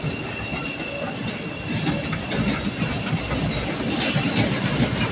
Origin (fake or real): real